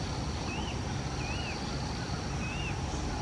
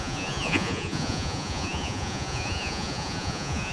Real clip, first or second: first